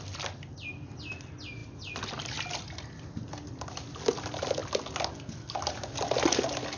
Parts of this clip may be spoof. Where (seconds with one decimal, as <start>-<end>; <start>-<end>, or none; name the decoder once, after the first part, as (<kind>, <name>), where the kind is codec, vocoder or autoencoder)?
none